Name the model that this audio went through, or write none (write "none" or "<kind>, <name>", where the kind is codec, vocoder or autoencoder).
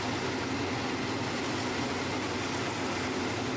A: none